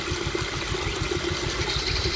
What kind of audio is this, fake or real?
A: real